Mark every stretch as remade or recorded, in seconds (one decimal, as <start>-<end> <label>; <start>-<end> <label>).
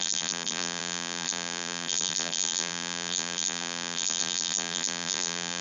0.0-5.6 remade